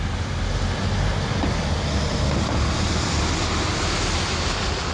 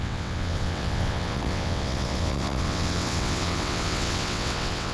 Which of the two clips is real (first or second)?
first